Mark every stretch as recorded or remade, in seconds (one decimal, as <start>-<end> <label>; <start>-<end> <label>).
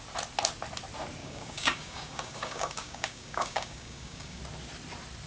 0.0-1.2 recorded; 1.2-4.4 remade; 4.4-5.3 recorded